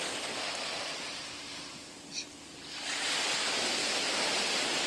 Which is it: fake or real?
real